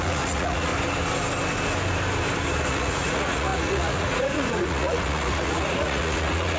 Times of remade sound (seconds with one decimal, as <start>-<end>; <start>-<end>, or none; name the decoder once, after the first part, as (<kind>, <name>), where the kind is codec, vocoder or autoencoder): 0.0-0.7 (vocoder, Vocos); 2.7-6.6